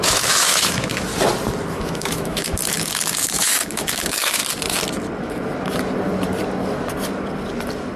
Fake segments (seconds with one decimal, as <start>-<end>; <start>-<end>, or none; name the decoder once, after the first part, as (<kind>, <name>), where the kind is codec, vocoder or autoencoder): 0.0-1.1 (autoencoder, DAC-VAE); 1.7-4.4